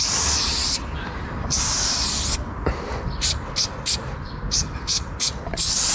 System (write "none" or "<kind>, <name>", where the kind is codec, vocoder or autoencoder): none